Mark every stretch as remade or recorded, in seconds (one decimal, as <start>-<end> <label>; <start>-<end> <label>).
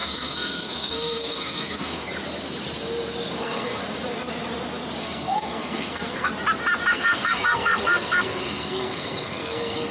0.0-2.1 remade; 2.1-3.4 recorded; 3.4-3.8 remade; 3.8-5.0 recorded; 5.0-6.3 remade; 6.3-6.9 recorded; 6.9-9.9 remade